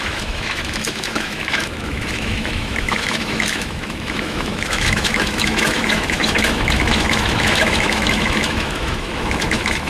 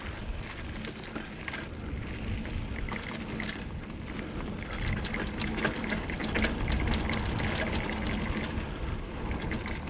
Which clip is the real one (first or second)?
second